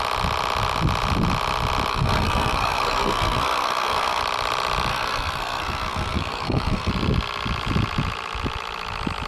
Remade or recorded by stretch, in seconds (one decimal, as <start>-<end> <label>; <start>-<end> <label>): 0.0-1.9 recorded; 1.9-4.2 remade; 4.2-4.9 recorded; 4.9-6.9 remade; 6.9-9.3 recorded